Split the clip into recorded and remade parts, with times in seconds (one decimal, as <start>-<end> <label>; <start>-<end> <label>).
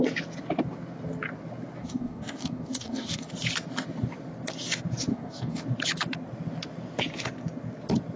0.0-1.8 recorded; 1.8-3.3 remade; 3.3-5.1 recorded; 5.1-5.6 remade; 5.6-8.2 recorded